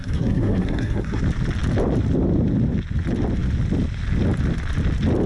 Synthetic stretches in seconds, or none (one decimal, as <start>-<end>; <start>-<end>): 0.0-1.2